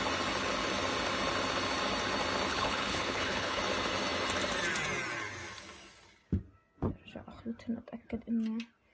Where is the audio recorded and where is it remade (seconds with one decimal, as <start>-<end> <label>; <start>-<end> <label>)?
0.0-2.5 recorded; 2.5-3.6 remade; 3.6-8.9 recorded